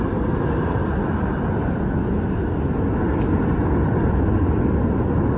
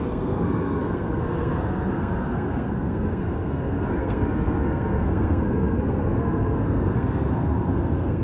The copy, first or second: second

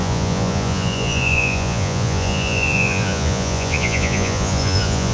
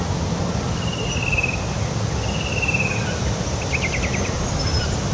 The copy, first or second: first